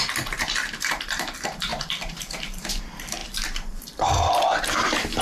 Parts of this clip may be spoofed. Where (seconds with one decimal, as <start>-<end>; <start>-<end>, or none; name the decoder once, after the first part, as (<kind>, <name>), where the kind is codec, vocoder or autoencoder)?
0.0-3.2 (vocoder, BigVGAN v2); 3.7-5.2